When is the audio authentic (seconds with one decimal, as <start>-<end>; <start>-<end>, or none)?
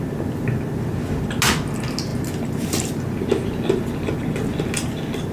0.0-5.3